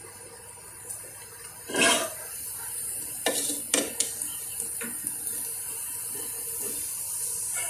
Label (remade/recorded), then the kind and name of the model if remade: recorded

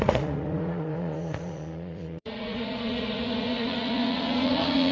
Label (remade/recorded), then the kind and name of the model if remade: remade, vocoder, Vocos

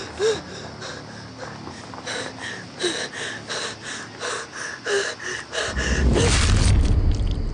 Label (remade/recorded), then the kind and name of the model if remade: recorded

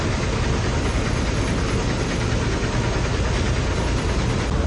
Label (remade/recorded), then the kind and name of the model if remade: recorded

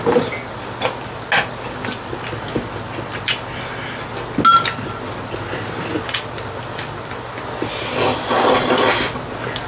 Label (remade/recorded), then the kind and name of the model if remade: recorded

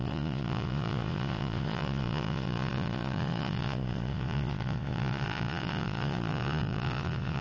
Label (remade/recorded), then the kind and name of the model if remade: remade, vocoder, Vocos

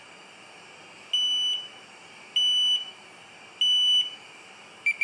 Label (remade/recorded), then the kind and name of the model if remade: recorded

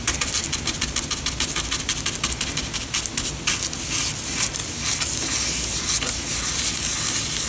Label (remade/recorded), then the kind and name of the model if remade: recorded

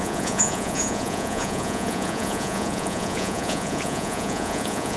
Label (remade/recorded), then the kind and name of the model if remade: remade, vocoder, Vocos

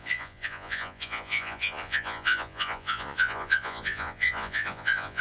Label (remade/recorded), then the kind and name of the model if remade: remade, vocoder, Vocos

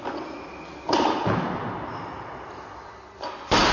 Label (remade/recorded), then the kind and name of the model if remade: recorded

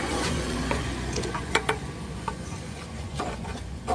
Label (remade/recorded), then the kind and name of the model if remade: remade, vocoder, Vocos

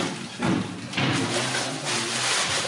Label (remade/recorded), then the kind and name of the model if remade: recorded